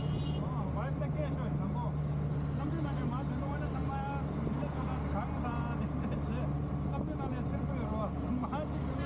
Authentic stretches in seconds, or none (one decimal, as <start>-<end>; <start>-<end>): 0.0-9.1